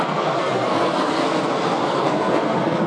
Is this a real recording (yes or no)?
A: no